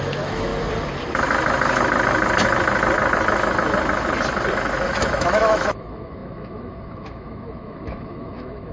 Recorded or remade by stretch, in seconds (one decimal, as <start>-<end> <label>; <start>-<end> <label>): 0.0-0.5 remade; 0.5-4.5 recorded; 4.5-8.7 remade